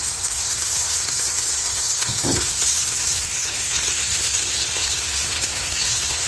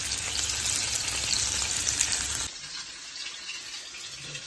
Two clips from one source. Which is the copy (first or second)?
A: first